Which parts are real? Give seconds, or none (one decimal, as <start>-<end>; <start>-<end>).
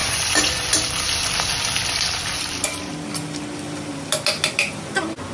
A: 0.7-5.3